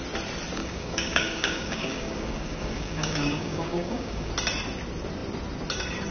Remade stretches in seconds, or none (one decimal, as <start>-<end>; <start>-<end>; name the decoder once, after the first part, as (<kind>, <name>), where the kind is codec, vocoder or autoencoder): 0.6-4.3 (codec, DAC)